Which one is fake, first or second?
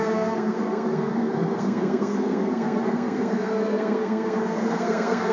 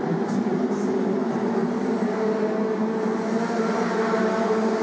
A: first